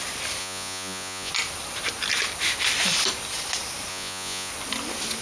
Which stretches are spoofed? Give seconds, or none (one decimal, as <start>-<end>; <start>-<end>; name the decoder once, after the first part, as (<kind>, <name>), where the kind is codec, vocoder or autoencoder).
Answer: 0.4-1.3 (vocoder, Vocos); 3.9-4.5

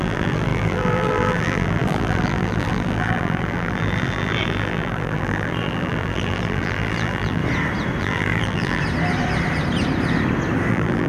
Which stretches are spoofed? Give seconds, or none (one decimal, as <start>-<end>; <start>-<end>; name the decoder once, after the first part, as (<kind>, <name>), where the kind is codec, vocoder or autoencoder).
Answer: 0.0-7.4 (vocoder, BigVGAN v2); 8.0-8.8; 10.7-11.1

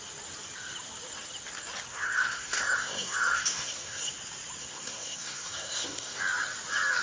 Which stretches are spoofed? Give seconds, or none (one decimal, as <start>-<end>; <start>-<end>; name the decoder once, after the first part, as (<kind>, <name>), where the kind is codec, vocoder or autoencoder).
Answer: 1.9-4.1 (codec, SNAC); 4.6-6.2

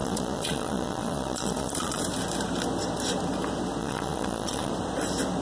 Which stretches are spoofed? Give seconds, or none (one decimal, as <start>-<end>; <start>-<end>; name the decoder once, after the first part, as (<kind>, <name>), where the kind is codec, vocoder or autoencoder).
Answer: 0.0-2.0 (vocoder, Vocos); 3.8-4.7